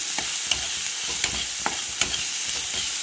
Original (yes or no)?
yes